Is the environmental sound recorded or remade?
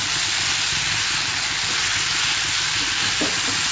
recorded